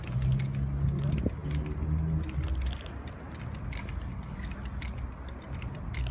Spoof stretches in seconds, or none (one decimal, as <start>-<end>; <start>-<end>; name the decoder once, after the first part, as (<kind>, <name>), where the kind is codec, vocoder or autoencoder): none